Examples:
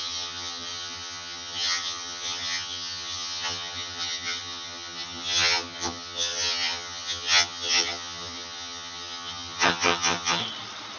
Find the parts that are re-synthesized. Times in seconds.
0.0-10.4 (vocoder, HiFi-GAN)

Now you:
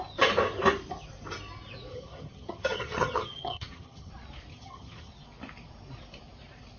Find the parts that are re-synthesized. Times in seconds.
1.9-4.1 (vocoder, HiFi-GAN); 4.5-5.1

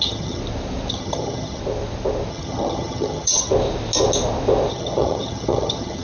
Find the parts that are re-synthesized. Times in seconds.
0.0-0.4 (vocoder, HiFi-GAN); 0.9-1.6; 2.3-3.5; 4.7-6.0

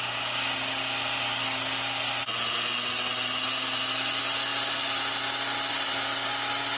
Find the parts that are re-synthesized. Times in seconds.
none

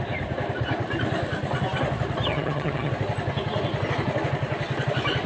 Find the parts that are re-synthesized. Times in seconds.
2.3-2.9 (vocoder, HiFi-GAN)

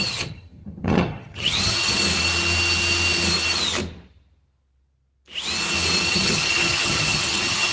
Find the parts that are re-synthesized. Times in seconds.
0.0-2.0 (vocoder, HiFi-GAN); 6.1-7.7

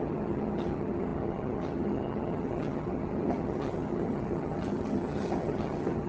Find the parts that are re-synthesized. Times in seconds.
0.0-6.1 (vocoder, HiFi-GAN)

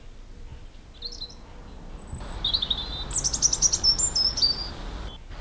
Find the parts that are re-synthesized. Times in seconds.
none